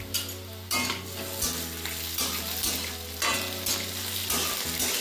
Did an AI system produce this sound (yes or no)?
no